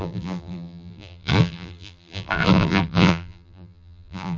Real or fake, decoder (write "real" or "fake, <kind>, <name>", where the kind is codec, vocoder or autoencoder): fake, vocoder, BigVGAN v2